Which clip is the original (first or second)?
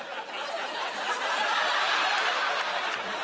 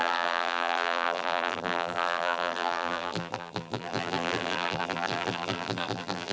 first